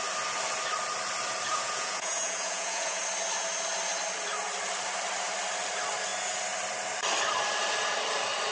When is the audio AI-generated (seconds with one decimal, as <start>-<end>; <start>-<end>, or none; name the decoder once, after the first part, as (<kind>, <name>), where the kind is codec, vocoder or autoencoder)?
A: 1.5-3.0 (vocoder, Vocos)